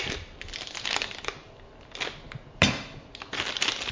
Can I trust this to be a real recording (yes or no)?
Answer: yes